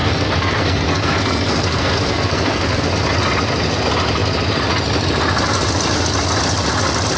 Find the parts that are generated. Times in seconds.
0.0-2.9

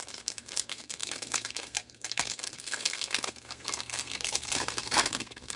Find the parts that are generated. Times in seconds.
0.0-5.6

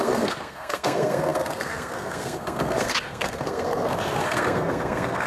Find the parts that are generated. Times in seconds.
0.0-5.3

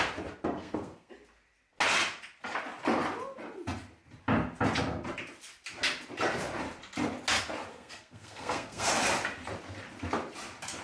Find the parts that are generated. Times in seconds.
0.6-1.1; 7.7-8.9

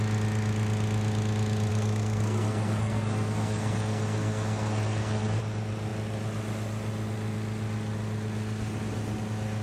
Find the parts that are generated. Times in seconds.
1.7-5.4

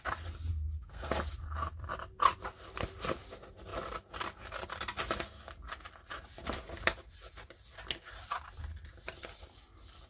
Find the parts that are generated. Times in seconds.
0.5-1.1